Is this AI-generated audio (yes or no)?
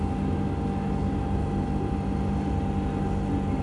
no